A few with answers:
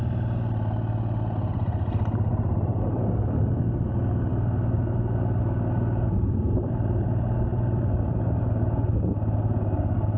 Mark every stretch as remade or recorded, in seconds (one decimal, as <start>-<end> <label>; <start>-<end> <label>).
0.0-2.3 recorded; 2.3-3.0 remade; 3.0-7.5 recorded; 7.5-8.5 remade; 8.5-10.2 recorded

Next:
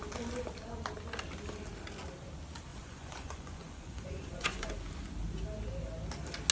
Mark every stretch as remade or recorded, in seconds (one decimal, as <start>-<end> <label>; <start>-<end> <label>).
0.0-2.7 recorded; 2.7-4.7 remade; 4.7-6.5 recorded

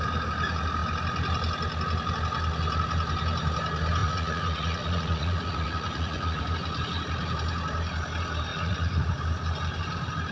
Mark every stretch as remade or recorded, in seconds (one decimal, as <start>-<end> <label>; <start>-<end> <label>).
0.0-4.0 recorded; 4.0-6.4 remade; 6.4-8.5 recorded; 8.5-9.1 remade; 9.1-10.3 recorded

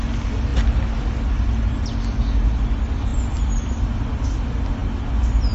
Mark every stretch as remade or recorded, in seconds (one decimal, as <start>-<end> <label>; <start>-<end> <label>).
0.0-3.1 recorded; 3.1-3.9 remade; 3.9-5.5 recorded

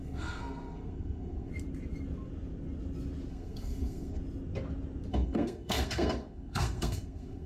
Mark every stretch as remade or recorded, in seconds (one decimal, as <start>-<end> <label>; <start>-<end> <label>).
0.0-1.5 remade; 1.5-3.3 recorded; 3.3-4.2 remade; 4.2-5.1 recorded; 5.1-7.5 remade

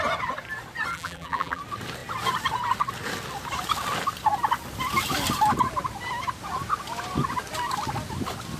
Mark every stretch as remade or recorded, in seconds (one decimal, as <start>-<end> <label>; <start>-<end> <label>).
0.0-0.9 recorded; 0.9-1.6 remade; 1.6-8.6 recorded

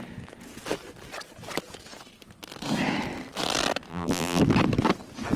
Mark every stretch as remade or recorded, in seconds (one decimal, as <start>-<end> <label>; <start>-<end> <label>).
0.0-3.9 recorded; 3.9-4.4 remade; 4.4-5.4 recorded

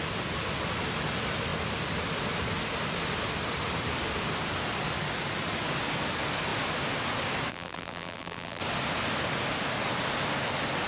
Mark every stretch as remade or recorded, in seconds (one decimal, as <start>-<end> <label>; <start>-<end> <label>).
0.0-7.5 recorded; 7.5-8.6 remade; 8.6-10.9 recorded